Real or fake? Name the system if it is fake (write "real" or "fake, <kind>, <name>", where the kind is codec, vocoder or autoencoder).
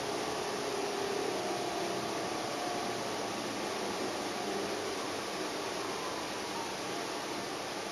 real